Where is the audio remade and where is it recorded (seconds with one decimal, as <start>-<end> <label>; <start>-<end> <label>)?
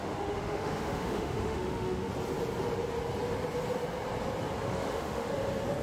0.0-2.1 remade; 2.1-4.7 recorded; 4.7-5.3 remade; 5.3-5.8 recorded